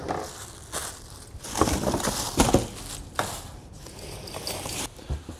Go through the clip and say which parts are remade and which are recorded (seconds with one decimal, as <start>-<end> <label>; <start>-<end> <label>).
0.0-5.4 recorded